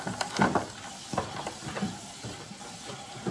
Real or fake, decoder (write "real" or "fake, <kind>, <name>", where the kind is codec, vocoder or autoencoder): real